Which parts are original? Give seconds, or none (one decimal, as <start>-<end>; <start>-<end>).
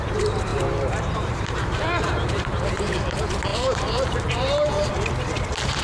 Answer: 0.0-0.5; 2.6-3.5; 4.9-5.8